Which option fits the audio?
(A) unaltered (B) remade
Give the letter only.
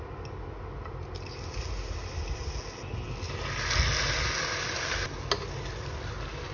A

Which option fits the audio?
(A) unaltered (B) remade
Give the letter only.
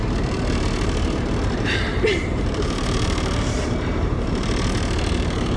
B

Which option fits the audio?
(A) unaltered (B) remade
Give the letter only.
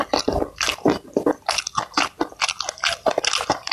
A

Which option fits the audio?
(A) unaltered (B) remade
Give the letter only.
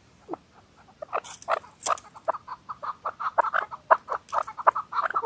A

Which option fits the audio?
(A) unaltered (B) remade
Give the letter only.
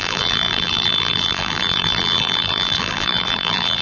B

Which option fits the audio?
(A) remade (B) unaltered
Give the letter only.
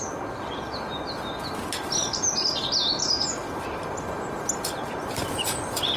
B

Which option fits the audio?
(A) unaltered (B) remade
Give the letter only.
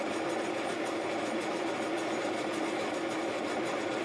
B